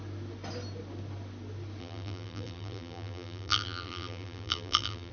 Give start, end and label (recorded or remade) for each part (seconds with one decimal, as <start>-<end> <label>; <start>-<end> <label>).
0.0-1.8 recorded; 1.8-5.1 remade